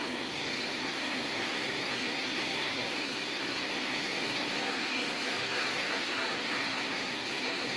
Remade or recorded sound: remade